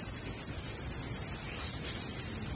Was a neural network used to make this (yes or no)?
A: no